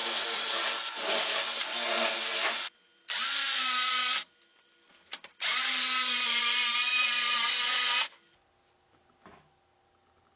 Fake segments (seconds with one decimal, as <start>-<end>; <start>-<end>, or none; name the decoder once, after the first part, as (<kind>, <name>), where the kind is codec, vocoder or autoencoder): none

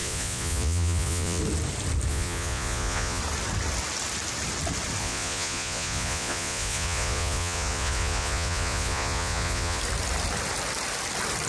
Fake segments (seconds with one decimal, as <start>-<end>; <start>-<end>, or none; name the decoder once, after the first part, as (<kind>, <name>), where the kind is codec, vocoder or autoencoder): 0.0-1.4 (vocoder, Vocos); 2.1-3.2; 5.0-9.8

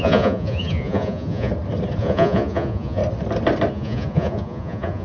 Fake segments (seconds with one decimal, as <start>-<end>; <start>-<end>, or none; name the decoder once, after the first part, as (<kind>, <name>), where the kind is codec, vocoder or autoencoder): 0.0-1.5 (vocoder, Vocos); 2.0-3.0; 3.7-5.0

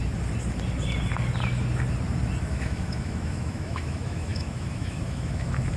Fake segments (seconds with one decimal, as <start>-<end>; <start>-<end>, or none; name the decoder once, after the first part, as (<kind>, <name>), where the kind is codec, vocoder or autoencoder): 2.5-5.8 (autoencoder, DAC-VAE)

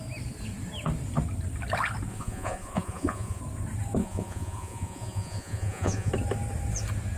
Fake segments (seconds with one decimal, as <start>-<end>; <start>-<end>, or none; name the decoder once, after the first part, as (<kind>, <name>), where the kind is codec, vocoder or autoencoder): 2.1-3.4 (vocoder, Vocos); 4.0-6.1

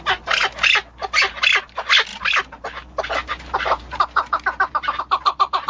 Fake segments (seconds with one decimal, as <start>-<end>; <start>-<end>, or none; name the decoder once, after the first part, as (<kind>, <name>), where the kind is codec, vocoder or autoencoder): none

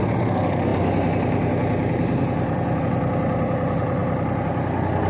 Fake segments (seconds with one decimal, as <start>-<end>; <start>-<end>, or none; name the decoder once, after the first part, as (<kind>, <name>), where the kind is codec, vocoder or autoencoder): none